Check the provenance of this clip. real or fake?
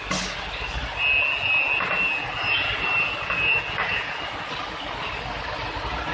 real